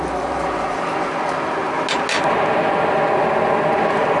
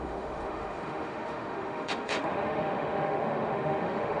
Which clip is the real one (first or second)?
first